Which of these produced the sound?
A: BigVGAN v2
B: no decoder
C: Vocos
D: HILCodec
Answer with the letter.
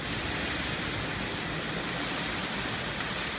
B